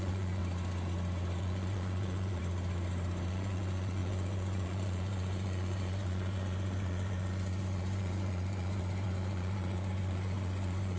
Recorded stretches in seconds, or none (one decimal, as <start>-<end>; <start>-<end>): 0.4-1.4; 2.4-3.3